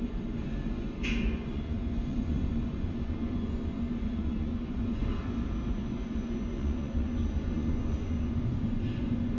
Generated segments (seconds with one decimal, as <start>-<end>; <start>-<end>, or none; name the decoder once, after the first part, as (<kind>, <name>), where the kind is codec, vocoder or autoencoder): 0.0-5.1 (vocoder, Vocos); 5.7-9.4